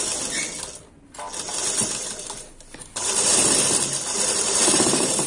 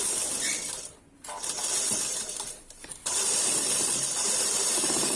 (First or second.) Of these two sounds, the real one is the first